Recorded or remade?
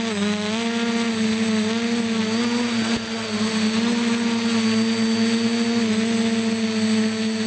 recorded